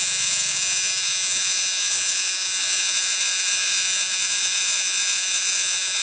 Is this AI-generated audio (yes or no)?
yes